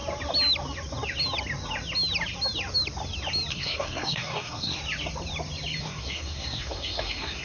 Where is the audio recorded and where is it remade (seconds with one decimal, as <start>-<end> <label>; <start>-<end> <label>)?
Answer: 0.0-3.5 recorded; 3.5-4.8 remade; 4.8-5.8 recorded; 5.8-7.4 remade